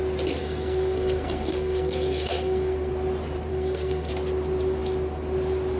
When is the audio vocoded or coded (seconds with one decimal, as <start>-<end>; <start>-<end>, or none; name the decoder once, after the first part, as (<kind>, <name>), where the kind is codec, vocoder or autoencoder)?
0.4-2.9 (codec, SNAC); 3.5-4.1